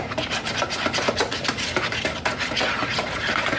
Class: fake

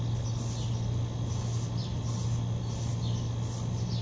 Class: real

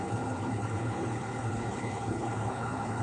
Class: fake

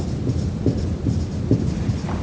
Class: real